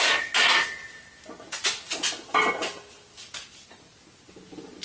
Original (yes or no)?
yes